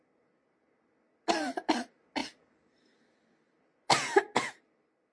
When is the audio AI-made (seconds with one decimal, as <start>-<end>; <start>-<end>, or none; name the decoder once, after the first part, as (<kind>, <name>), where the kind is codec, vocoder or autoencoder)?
none